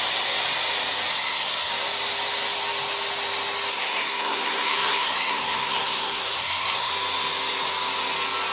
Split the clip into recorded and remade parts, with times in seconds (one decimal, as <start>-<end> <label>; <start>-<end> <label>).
0.0-1.1 recorded; 1.1-1.7 remade; 1.7-3.7 recorded; 3.7-6.9 remade; 6.9-8.5 recorded